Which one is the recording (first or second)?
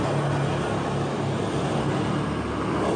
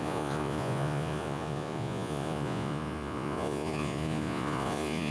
first